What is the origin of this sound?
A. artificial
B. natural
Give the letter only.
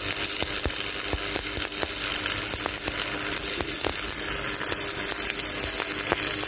B